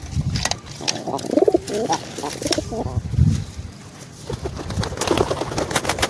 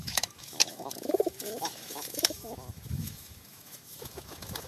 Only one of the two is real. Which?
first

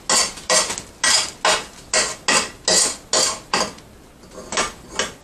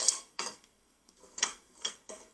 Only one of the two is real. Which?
first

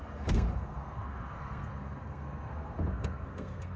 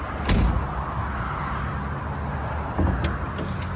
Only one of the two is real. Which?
second